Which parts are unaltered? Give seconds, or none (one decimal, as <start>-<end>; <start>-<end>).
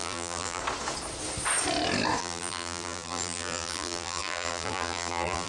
0.6-2.2